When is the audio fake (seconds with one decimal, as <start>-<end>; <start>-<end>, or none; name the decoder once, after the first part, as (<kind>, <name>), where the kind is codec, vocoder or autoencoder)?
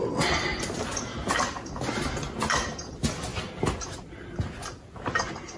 none